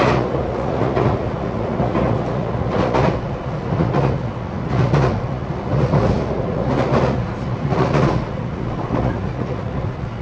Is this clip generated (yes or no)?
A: yes